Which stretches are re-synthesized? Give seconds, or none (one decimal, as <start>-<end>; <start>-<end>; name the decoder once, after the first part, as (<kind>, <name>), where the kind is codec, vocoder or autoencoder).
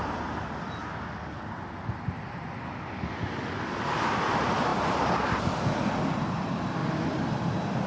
0.0-0.8 (vocoder, BigVGAN v2); 3.7-7.9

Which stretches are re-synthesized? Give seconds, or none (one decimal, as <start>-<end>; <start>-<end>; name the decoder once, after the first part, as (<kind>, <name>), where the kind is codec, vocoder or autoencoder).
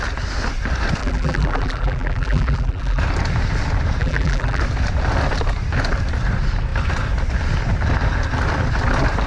1.0-3.0 (vocoder, BigVGAN v2); 4.0-4.6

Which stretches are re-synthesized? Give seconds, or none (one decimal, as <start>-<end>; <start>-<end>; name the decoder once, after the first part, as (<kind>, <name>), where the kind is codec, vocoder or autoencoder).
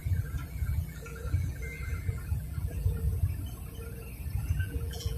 0.0-3.1 (vocoder, BigVGAN v2); 4.4-5.2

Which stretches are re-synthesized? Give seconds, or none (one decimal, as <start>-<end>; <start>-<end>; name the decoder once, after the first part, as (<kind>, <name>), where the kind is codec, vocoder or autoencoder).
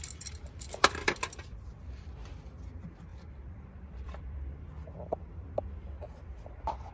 0.0-6.9 (vocoder, BigVGAN v2)